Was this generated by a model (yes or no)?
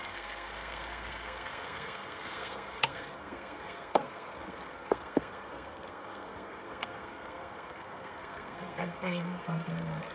yes